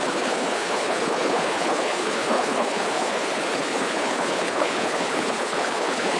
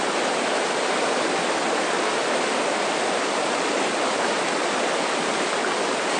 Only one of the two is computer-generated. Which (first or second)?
first